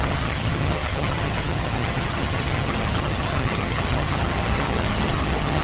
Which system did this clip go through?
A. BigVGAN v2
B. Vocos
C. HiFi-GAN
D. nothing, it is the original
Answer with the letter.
C